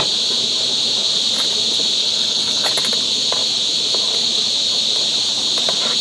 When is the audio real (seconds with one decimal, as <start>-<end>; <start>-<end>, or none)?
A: 0.0-2.0; 2.7-6.0